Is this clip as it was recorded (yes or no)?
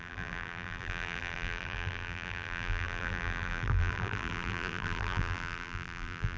no